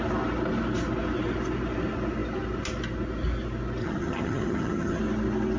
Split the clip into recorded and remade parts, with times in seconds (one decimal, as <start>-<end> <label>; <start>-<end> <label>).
0.0-3.8 recorded; 3.8-5.0 remade; 5.0-5.6 recorded